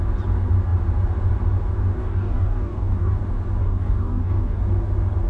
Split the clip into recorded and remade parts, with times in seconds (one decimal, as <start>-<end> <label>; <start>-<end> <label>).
0.0-2.0 recorded; 2.0-3.2 remade; 3.2-3.6 recorded; 3.6-4.6 remade; 4.6-5.3 recorded